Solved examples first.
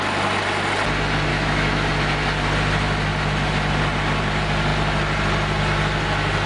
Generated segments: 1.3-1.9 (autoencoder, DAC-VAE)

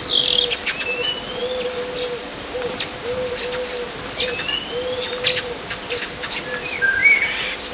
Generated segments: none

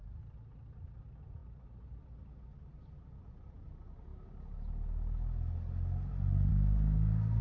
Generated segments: 6.5-7.4 (codec, DAC)

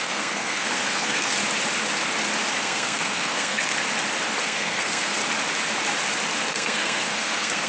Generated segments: 0.0-1.3 (codec, SNAC); 2.6-3.7; 4.4-5.2; 6.5-7.7

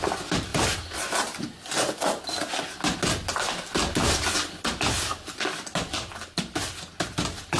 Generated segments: none

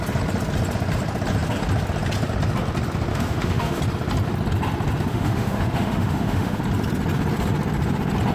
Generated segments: 3.1-3.8 (autoencoder, DAC-VAE); 5.1-6.6

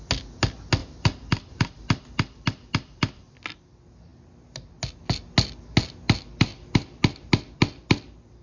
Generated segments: 0.8-3.6 (vocoder, BigVGAN v2)